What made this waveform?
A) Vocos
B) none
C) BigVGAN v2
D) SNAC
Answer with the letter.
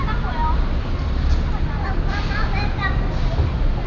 B